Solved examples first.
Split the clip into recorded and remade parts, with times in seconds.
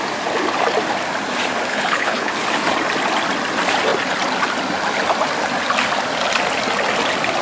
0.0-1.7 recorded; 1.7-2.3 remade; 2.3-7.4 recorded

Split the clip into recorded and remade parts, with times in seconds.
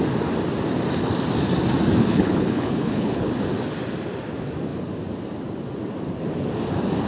0.0-2.1 recorded; 2.1-3.3 remade; 3.3-7.1 recorded